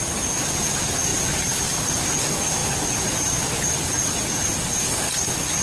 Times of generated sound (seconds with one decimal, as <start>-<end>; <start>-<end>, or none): none